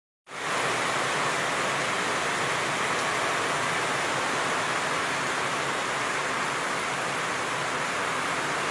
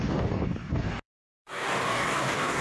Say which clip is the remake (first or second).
second